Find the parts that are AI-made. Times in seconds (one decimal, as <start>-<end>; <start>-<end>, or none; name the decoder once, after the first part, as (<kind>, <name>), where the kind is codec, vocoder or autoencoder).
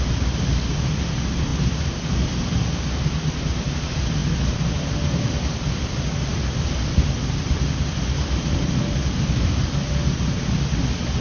none